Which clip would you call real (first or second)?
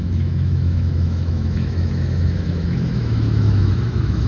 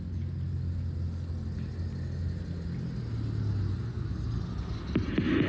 second